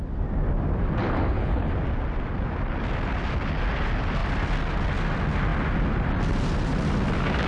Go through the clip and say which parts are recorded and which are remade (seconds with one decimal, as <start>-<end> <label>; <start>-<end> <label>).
0.0-1.0 recorded; 1.0-1.7 remade; 1.7-7.5 recorded